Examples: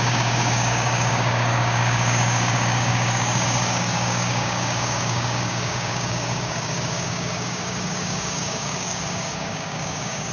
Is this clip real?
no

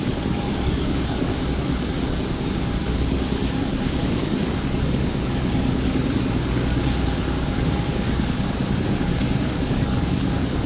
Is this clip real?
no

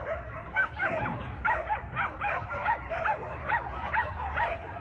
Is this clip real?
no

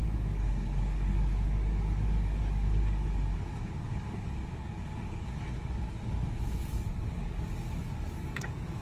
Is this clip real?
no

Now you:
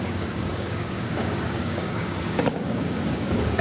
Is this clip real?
no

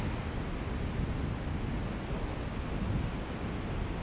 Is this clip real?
yes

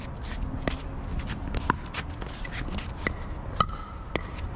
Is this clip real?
yes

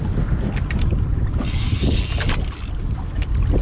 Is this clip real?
yes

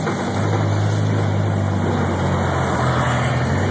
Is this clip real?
yes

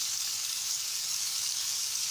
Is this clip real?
no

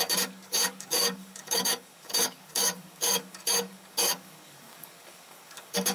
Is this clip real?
no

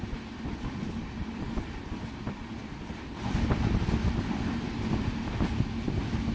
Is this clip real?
yes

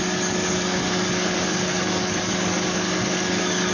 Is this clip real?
no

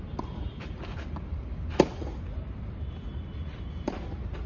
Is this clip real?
yes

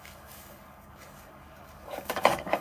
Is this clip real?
no